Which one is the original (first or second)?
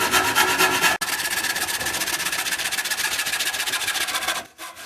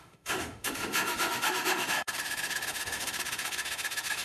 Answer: first